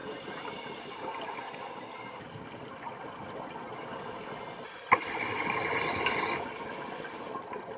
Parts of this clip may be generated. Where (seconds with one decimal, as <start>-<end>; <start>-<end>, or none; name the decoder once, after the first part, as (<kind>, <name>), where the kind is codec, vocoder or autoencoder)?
none